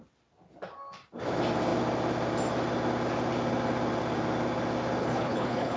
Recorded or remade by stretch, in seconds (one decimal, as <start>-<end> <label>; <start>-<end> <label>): 0.0-5.0 recorded; 5.0-5.8 remade